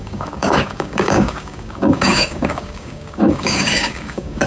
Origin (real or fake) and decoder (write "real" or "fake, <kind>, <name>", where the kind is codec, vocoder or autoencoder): fake, codec, DAC